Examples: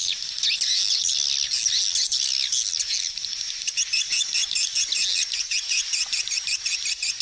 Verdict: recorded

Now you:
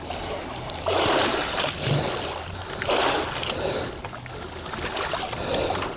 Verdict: recorded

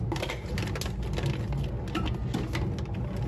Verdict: recorded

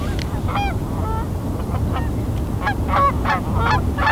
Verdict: recorded